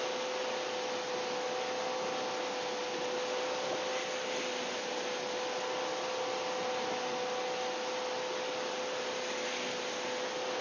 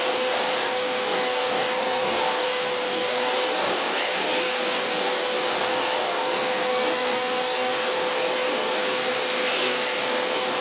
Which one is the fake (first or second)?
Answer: second